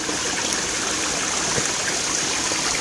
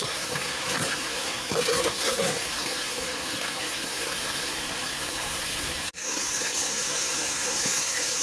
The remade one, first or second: second